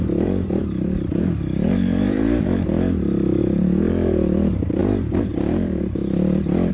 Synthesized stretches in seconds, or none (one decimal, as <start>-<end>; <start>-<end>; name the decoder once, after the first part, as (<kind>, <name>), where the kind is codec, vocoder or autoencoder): 0.0-6.0 (vocoder, BigVGAN v2)